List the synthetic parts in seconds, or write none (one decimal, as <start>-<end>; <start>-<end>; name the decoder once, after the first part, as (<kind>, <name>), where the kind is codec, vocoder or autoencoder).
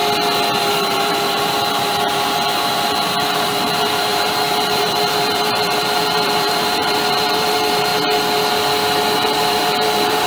0.7-7.9 (vocoder, BigVGAN v2); 9.0-10.3